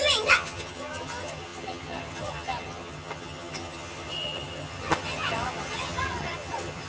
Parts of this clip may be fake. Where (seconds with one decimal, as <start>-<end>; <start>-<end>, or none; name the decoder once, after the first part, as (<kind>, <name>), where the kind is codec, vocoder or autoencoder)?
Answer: 0.0-6.9 (vocoder, HiFi-GAN)